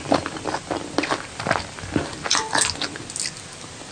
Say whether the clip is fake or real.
real